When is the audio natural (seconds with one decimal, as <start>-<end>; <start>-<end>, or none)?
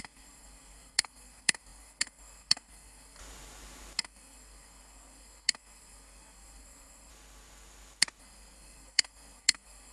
3.2-4.0; 7.1-8.2